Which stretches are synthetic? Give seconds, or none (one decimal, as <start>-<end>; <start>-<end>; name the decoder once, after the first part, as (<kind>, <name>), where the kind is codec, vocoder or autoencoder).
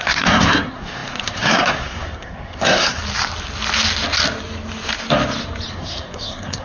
0.0-3.0 (codec, SNAC); 5.7-6.6